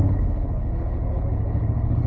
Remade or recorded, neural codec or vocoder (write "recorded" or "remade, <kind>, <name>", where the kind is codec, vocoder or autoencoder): remade, codec, HILCodec